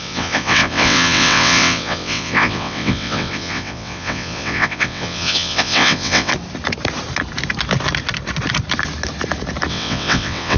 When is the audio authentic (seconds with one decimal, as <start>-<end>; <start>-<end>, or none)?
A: 6.3-9.7